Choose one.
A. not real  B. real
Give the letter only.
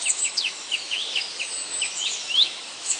A